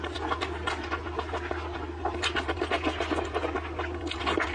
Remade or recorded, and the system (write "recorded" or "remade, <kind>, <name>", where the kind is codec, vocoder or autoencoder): recorded